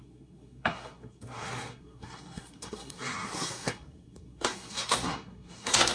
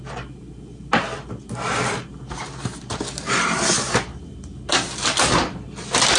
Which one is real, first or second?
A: second